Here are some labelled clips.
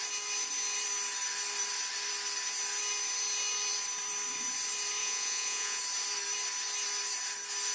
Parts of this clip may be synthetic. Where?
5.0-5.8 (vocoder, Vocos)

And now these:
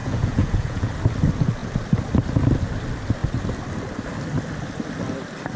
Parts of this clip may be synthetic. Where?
0.0-0.9 (vocoder, Vocos)

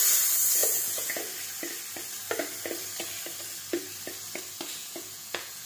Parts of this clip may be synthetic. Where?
0.6-1.2 (vocoder, Vocos); 4.8-5.7

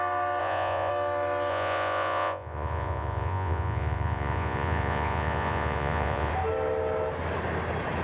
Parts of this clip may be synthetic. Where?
0.4-0.9 (vocoder, Vocos); 1.5-6.3

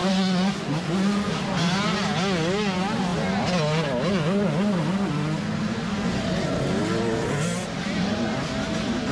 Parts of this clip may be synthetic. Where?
0.0-1.3 (vocoder, Vocos)

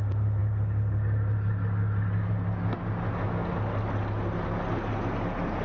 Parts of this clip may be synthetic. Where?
none

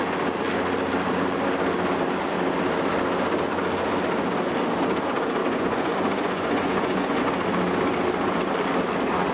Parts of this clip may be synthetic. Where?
5.4-7.2 (vocoder, Vocos)

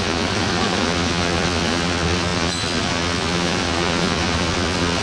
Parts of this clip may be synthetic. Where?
0.0-5.0 (vocoder, Vocos)